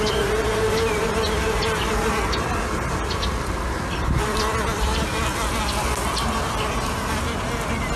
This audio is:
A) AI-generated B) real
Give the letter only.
B